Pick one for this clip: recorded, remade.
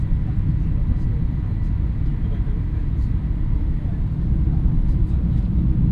recorded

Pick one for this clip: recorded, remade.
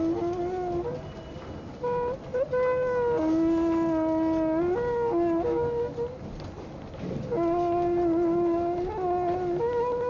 recorded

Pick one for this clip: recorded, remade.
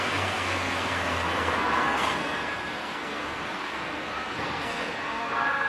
remade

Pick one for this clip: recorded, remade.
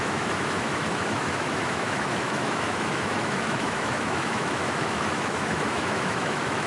remade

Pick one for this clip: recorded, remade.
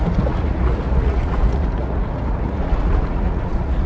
remade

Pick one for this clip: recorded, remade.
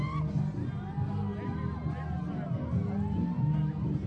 recorded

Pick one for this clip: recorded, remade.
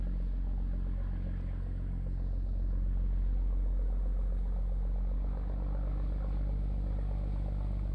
recorded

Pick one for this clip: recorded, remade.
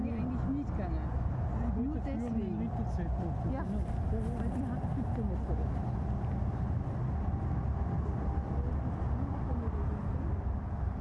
recorded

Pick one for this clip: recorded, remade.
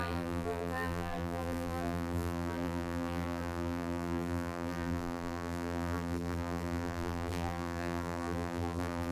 remade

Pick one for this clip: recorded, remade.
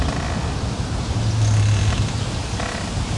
recorded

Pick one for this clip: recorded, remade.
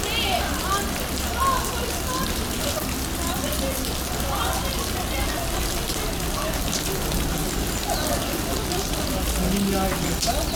recorded